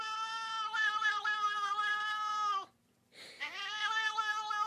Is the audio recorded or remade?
remade